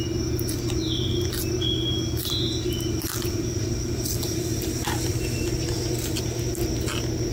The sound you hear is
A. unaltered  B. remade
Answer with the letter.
A